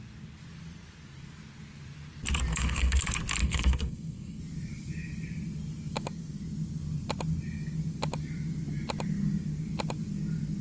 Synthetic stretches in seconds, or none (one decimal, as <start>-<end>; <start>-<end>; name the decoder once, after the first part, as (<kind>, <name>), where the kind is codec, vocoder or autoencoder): 2.5-3.0 (codec, SNAC); 3.4-4.4